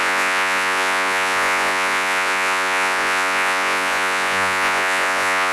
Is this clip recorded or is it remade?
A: remade